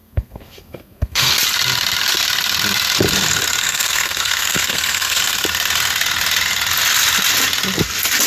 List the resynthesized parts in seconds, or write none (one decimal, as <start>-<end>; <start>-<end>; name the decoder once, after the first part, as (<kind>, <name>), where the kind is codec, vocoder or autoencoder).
0.0-1.3 (codec, SNAC); 3.6-5.2